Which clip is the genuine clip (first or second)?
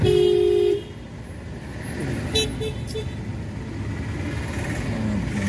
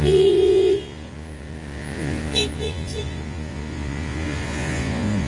first